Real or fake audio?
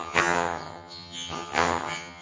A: fake